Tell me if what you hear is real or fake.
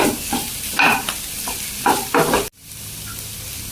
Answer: real